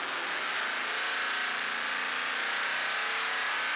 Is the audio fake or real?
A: real